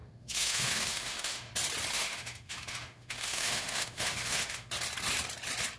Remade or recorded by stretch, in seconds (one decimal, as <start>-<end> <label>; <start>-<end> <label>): 0.0-1.5 remade; 1.5-1.9 recorded; 1.9-4.7 remade; 4.7-5.8 recorded